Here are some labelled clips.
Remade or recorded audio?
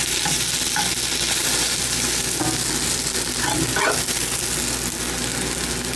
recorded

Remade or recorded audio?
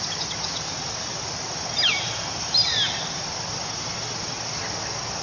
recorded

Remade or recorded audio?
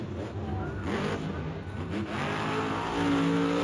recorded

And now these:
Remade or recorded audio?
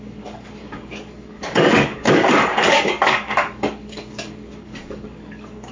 remade